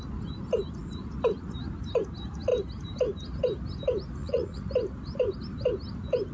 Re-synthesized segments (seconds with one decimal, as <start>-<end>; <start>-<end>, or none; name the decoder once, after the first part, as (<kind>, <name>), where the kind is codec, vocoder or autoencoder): 4.2-4.7 (vocoder, Vocos)